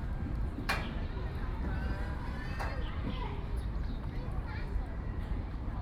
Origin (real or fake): fake